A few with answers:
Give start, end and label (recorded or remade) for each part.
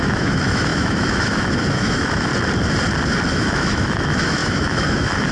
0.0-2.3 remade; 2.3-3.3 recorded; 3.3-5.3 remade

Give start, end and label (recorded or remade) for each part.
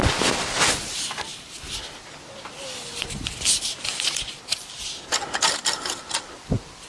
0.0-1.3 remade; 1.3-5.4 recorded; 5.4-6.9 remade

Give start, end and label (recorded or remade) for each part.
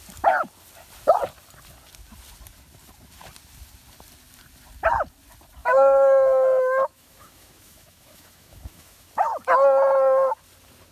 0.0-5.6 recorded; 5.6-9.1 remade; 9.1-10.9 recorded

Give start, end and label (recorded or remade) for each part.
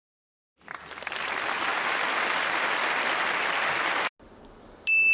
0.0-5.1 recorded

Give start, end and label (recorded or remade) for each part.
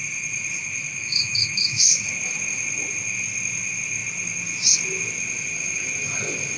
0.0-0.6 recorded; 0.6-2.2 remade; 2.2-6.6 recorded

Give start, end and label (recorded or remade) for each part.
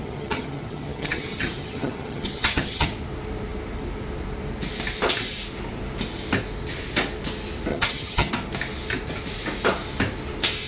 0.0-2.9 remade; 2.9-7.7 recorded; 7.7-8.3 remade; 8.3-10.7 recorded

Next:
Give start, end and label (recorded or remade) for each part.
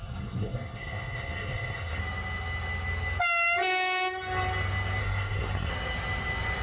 0.0-2.0 remade; 2.0-5.0 recorded; 5.0-5.7 remade; 5.7-6.6 recorded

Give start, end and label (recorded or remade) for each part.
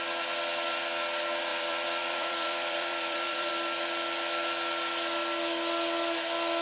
0.0-1.5 recorded; 1.5-3.5 remade; 3.5-6.6 recorded